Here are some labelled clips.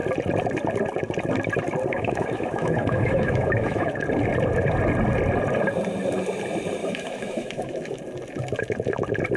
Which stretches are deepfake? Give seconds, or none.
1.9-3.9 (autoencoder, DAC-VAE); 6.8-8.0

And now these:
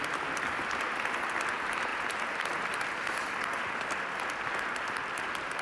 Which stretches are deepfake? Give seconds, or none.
none